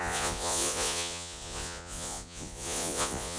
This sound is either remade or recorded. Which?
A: remade